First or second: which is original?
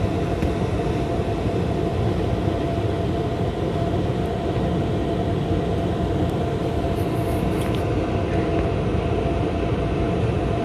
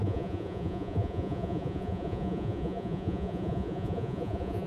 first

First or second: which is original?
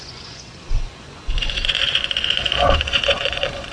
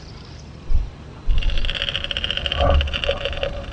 second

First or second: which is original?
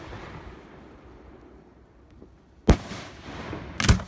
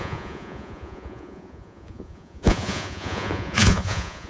first